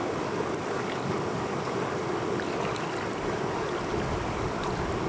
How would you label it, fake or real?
real